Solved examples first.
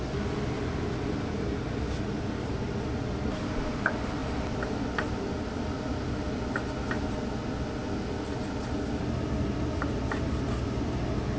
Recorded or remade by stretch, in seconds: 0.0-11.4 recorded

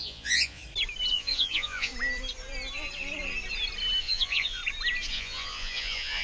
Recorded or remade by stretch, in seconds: 0.0-0.6 remade; 0.6-1.1 recorded; 1.1-1.9 remade; 1.9-4.0 recorded; 4.0-4.6 remade; 4.6-5.1 recorded; 5.1-6.2 remade

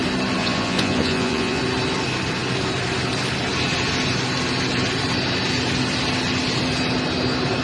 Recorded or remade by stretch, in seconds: 0.0-0.4 recorded; 0.4-1.6 remade; 1.6-7.6 recorded

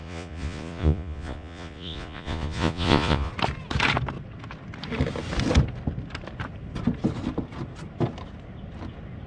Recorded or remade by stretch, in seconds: 0.0-3.3 remade; 3.3-9.3 recorded

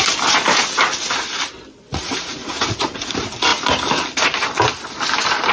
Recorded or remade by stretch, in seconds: 0.0-1.9 recorded; 1.9-3.1 remade; 3.1-5.5 recorded